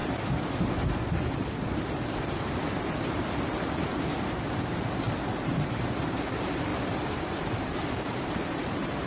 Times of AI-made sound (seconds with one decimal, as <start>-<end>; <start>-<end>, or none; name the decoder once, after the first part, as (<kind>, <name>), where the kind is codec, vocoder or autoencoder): 2.4-9.1 (vocoder, BigVGAN v2)